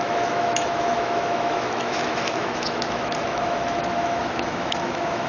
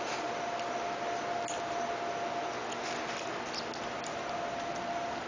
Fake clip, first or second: first